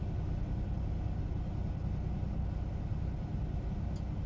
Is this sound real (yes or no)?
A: yes